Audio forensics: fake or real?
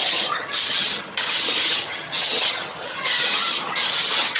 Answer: fake